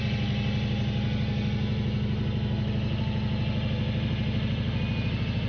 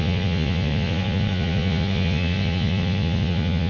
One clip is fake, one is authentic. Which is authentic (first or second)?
first